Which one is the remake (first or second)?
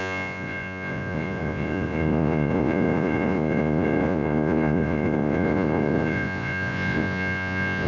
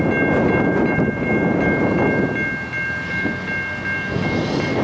first